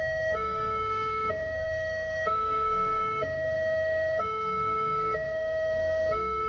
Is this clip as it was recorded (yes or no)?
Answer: no